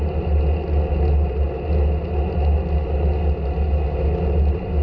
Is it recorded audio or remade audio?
recorded